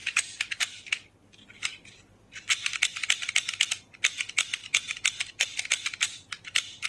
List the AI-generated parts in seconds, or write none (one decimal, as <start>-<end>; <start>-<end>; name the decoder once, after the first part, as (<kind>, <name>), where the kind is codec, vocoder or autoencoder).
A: none